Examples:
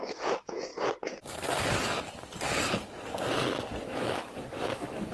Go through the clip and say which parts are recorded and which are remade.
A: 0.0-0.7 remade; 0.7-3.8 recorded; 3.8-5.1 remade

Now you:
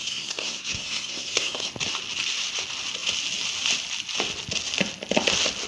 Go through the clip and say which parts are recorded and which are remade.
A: 0.0-1.7 remade; 1.7-5.7 recorded

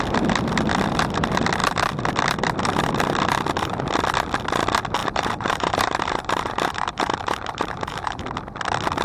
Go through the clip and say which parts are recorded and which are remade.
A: 0.0-5.0 recorded; 5.0-8.2 remade; 8.2-9.0 recorded

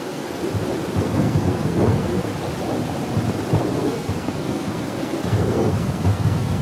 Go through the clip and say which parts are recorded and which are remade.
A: 0.0-0.4 remade; 0.4-1.0 recorded; 1.0-2.3 remade; 2.3-3.5 recorded; 3.5-6.6 remade

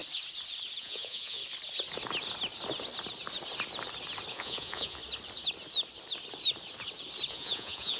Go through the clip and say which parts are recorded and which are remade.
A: 0.0-0.8 recorded; 0.8-1.4 remade; 1.4-4.3 recorded; 4.3-5.0 remade; 5.0-7.3 recorded; 7.3-8.0 remade

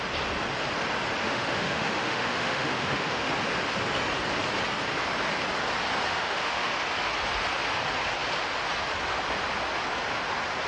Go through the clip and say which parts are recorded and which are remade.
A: 0.0-1.2 recorded; 1.2-3.3 remade; 3.3-6.1 recorded; 6.1-6.7 remade; 6.7-10.7 recorded